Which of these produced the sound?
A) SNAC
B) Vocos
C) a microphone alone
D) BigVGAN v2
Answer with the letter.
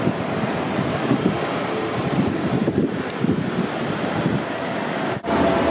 C